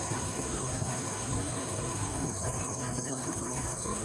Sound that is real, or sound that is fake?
fake